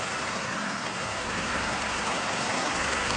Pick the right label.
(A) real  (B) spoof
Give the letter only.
B